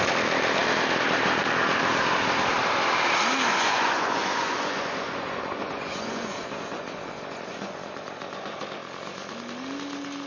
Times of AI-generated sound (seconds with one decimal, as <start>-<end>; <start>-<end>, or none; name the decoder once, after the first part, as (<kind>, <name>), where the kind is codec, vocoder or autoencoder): 3.5-8.6 (vocoder, Vocos)